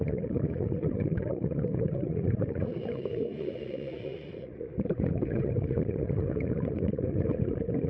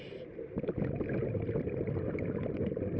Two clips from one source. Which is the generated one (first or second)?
first